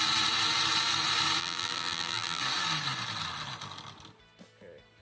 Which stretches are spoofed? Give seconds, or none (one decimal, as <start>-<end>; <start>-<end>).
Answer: 1.4-2.4